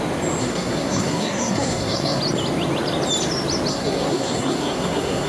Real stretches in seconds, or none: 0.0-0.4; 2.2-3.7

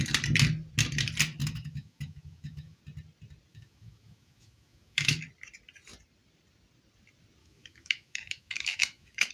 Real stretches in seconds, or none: 0.0-1.4; 2.8-3.5; 5.2-7.4